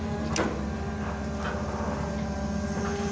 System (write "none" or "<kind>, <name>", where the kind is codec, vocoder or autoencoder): none